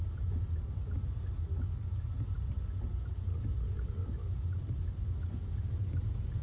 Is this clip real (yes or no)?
yes